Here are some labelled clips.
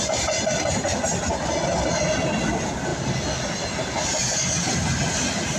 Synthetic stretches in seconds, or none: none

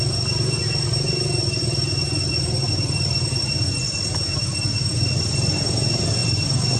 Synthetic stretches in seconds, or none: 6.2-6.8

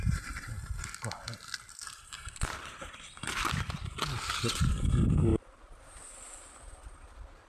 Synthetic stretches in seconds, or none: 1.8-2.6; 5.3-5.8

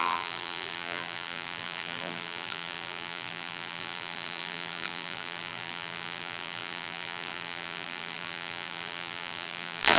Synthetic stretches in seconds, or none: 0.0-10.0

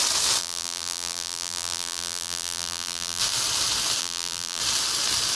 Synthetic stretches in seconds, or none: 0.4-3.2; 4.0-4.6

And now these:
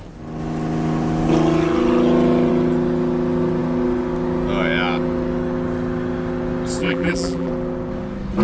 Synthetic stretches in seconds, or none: 6.8-7.5

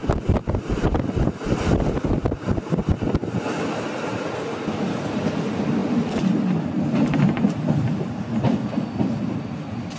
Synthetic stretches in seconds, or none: none